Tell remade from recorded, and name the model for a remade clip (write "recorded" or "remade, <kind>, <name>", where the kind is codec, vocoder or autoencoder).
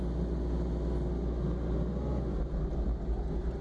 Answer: recorded